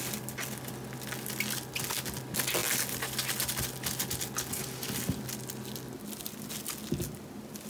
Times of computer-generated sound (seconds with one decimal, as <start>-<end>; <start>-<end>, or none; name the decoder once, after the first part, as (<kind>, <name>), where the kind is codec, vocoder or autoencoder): none